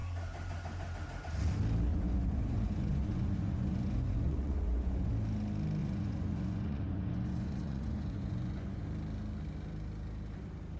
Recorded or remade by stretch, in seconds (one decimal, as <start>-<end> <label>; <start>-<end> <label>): 0.0-1.9 recorded; 1.9-5.1 remade; 5.1-5.8 recorded; 5.8-8.8 remade; 8.8-10.8 recorded